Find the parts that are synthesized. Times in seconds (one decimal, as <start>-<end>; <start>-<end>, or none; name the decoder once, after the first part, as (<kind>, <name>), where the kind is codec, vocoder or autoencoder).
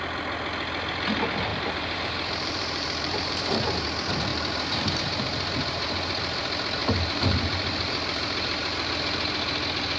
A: 1.5-3.6 (vocoder, BigVGAN v2); 4.3-4.9; 6.8-8.9